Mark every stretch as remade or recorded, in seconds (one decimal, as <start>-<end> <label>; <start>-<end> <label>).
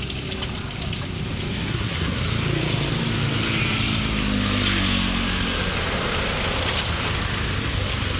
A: 0.0-1.5 recorded; 1.5-2.2 remade; 2.2-8.2 recorded